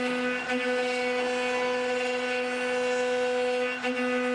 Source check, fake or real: real